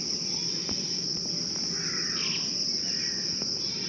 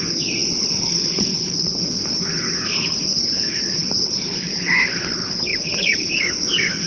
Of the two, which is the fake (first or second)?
second